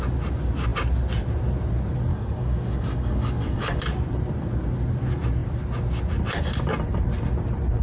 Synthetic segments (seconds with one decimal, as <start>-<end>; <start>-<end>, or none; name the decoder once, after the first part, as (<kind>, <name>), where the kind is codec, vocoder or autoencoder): 2.1-3.8 (codec, DAC)

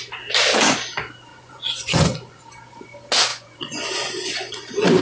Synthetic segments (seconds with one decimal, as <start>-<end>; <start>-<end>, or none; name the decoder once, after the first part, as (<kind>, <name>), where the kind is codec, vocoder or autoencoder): 1.3-2.4 (vocoder, Vocos); 3.3-4.5